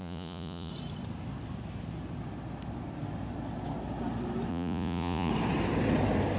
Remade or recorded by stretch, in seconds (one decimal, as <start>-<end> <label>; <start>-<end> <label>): 0.0-0.7 remade; 0.7-4.5 recorded; 4.5-5.3 remade; 5.3-6.4 recorded